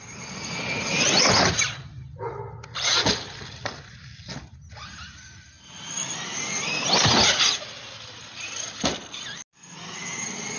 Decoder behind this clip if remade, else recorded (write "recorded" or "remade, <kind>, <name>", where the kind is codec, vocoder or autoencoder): recorded